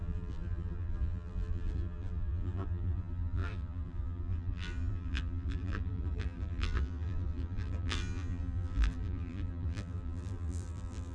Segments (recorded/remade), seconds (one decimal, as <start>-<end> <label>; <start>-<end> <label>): 0.0-11.1 remade